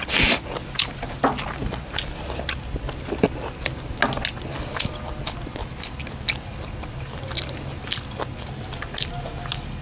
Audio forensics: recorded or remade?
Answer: recorded